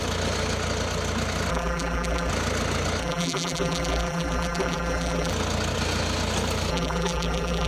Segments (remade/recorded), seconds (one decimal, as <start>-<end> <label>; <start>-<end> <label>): 0.0-1.5 recorded; 1.5-2.3 remade; 2.3-3.0 recorded; 3.0-5.3 remade; 5.3-6.7 recorded; 6.7-7.7 remade